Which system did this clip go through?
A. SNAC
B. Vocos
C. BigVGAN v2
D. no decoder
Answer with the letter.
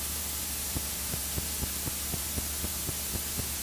C